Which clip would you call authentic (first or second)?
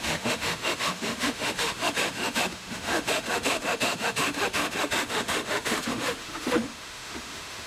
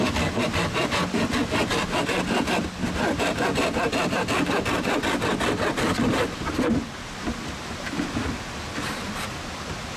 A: second